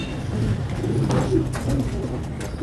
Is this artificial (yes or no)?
no